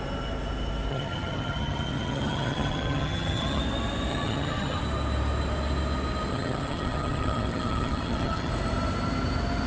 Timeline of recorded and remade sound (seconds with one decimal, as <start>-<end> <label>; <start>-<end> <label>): 0.0-0.9 recorded; 0.9-3.6 remade; 3.6-4.1 recorded; 4.1-4.8 remade; 4.8-6.3 recorded; 6.3-8.5 remade; 8.5-9.7 recorded